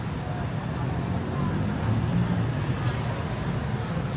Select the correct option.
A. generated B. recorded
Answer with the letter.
B